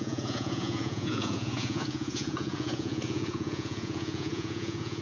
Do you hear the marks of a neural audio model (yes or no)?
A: yes